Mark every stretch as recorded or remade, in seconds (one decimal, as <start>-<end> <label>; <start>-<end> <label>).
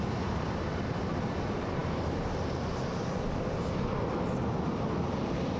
0.0-5.6 recorded